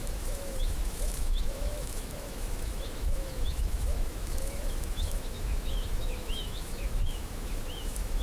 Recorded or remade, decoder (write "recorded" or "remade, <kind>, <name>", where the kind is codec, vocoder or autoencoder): remade, autoencoder, DAC-VAE